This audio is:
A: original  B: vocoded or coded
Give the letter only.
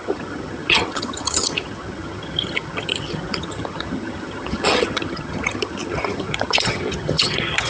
B